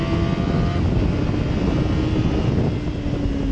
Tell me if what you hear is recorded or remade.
recorded